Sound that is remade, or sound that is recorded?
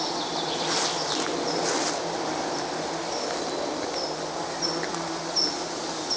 recorded